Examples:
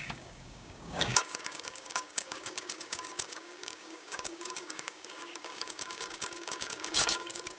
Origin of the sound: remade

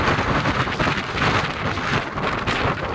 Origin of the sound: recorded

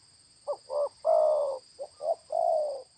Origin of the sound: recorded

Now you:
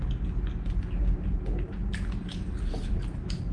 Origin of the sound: recorded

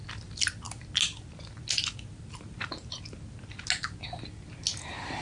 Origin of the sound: recorded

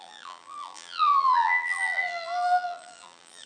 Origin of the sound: remade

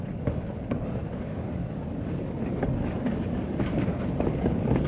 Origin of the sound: remade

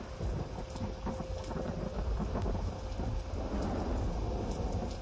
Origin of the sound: recorded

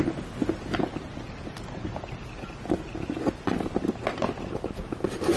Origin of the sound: recorded